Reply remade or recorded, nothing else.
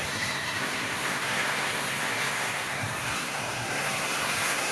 remade